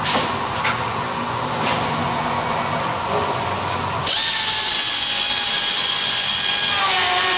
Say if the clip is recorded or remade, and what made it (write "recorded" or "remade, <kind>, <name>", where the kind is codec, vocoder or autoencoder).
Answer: remade, vocoder, Vocos